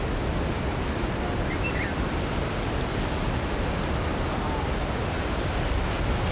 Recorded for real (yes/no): yes